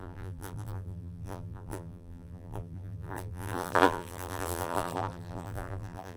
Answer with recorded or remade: remade